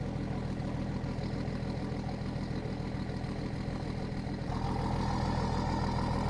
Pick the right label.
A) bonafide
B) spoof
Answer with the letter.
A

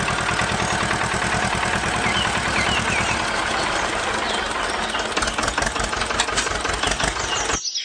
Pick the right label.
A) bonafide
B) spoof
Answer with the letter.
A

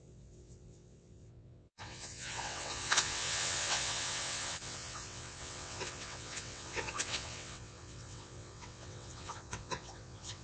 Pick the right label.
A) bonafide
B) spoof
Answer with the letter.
B